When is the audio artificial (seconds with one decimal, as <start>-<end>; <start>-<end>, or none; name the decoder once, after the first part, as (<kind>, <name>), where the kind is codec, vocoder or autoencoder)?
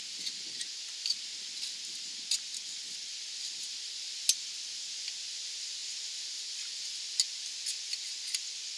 none